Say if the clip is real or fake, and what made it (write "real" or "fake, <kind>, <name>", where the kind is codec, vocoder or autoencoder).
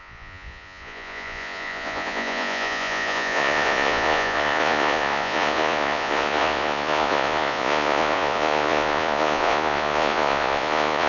fake, vocoder, Vocos